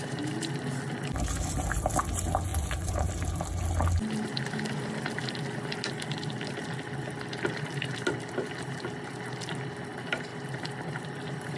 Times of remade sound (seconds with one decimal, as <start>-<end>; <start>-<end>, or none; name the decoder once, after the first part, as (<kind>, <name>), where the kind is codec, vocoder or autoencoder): 2.5-3.1 (vocoder, Vocos)